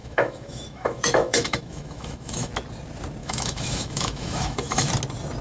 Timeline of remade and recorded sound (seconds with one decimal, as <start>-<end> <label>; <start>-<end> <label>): 0.0-2.5 remade; 2.5-3.2 recorded; 3.2-4.9 remade; 4.9-5.4 recorded